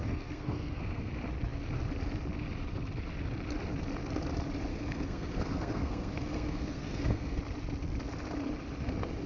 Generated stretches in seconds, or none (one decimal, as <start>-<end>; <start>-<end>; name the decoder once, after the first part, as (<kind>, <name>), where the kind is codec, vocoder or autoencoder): 0.0-1.1 (codec, SNAC); 4.7-7.4